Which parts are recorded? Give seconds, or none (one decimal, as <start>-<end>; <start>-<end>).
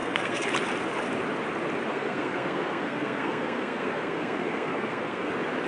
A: 0.5-1.9; 5.3-5.7